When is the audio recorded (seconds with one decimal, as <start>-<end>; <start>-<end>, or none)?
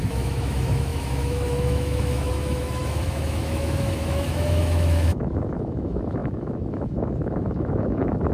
none